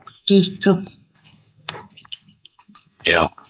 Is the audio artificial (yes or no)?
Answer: yes